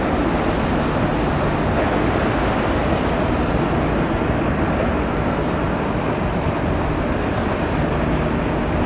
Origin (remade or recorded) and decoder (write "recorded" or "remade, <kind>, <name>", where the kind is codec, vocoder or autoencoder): recorded